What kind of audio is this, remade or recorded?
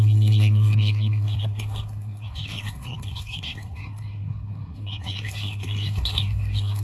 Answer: remade